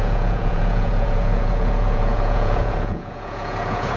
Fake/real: fake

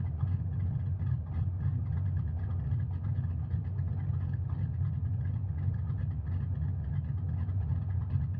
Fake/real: fake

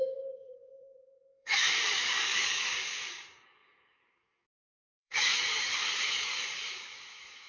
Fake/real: fake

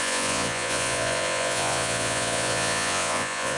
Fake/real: fake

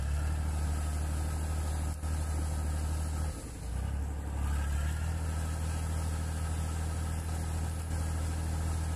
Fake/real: real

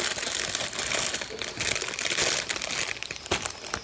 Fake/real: real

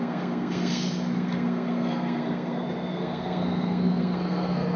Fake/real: fake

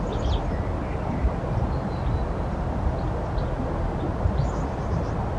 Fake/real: real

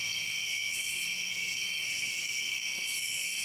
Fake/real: fake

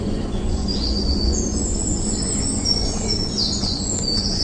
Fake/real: fake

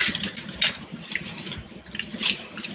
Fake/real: real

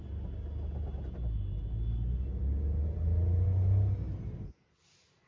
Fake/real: real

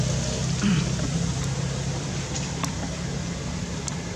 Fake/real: real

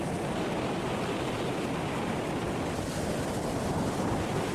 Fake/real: fake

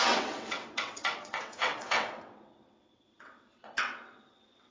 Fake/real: fake